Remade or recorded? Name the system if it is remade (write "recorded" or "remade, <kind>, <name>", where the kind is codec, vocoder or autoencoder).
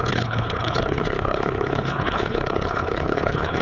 remade, codec, HILCodec